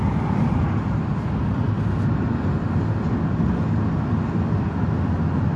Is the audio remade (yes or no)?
no